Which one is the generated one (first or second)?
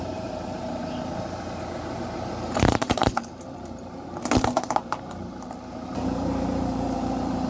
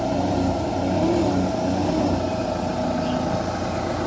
first